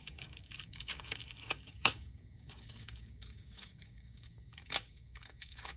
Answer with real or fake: fake